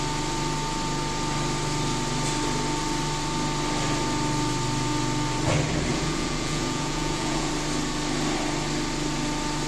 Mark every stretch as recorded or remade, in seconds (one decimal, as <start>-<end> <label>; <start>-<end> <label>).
0.0-5.9 recorded; 5.9-7.5 remade; 7.5-9.7 recorded